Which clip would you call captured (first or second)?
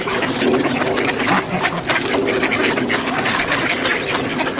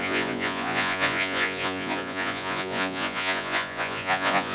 first